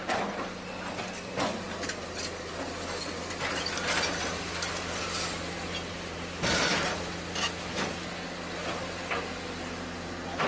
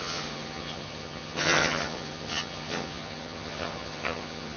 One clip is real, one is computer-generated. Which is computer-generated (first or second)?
second